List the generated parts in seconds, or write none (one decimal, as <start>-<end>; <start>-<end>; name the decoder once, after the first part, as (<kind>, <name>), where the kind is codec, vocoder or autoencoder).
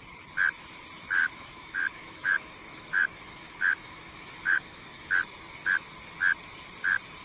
1.2-5.1 (autoencoder, DAC-VAE)